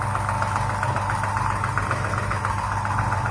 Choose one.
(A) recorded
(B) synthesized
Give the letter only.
A